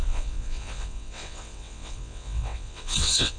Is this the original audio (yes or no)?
no